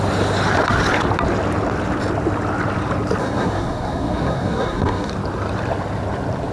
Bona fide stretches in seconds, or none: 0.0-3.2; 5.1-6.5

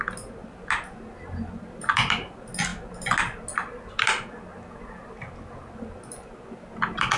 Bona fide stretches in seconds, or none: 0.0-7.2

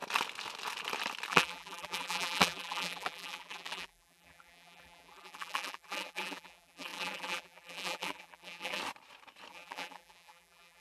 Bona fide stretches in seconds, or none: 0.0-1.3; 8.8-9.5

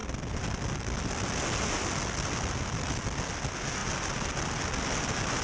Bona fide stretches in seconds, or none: 0.0-5.4